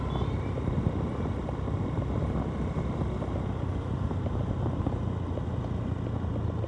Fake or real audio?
real